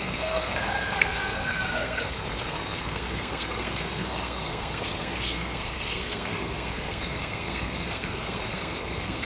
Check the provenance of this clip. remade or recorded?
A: remade